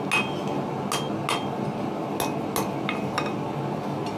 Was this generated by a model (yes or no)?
no